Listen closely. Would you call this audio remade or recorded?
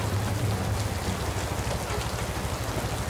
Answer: recorded